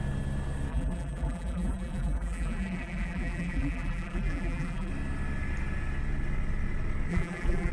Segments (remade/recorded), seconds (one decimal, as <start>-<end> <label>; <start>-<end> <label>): 0.0-0.7 recorded; 0.7-4.9 remade; 4.9-7.1 recorded; 7.1-7.7 remade

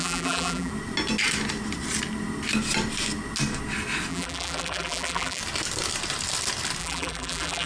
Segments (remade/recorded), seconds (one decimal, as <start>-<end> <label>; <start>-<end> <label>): 0.0-0.7 remade; 0.7-4.1 recorded; 4.1-5.4 remade; 5.4-6.8 recorded; 6.8-7.7 remade

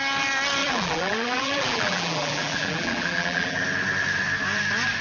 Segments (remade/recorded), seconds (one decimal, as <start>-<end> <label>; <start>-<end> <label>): 0.0-0.6 recorded; 0.6-3.6 remade; 3.6-5.0 recorded

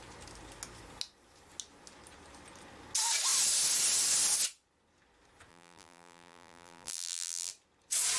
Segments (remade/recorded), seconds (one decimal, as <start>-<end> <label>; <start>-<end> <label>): 0.0-5.5 recorded; 5.5-7.5 remade; 7.5-8.2 recorded

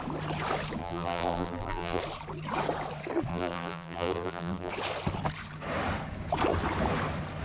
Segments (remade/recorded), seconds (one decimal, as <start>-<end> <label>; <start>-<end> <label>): 0.0-0.8 recorded; 0.8-2.0 remade; 2.0-3.3 recorded; 3.3-4.7 remade; 4.7-7.4 recorded

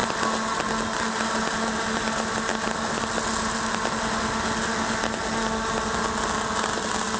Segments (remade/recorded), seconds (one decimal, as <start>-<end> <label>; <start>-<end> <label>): 0.0-7.2 recorded

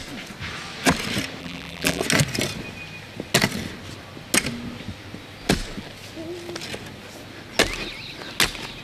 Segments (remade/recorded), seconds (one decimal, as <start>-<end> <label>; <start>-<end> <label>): 0.0-1.4 recorded; 1.4-2.0 remade; 2.0-8.8 recorded

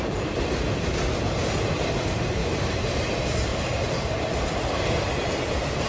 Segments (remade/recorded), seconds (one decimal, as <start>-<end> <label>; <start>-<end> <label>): 0.0-2.4 recorded; 2.4-3.1 remade; 3.1-3.5 recorded; 3.5-5.1 remade; 5.1-5.9 recorded